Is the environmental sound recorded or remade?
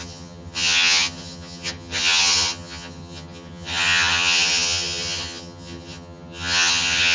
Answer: remade